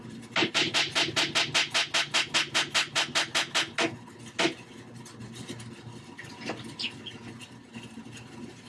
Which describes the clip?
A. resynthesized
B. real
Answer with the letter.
B